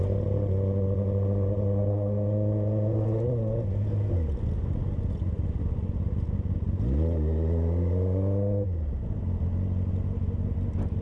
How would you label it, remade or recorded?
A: recorded